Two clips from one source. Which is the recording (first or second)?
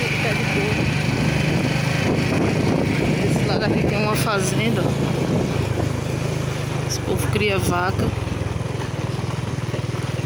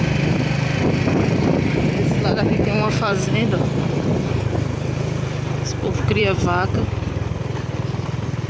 first